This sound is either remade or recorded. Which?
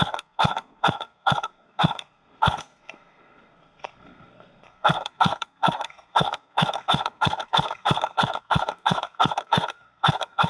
remade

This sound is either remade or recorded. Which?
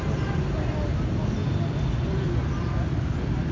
recorded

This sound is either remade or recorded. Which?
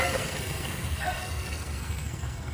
remade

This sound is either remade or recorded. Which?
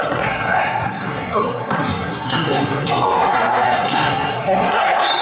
remade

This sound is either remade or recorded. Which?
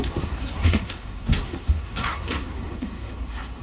remade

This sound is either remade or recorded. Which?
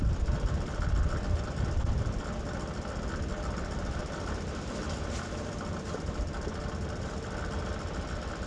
recorded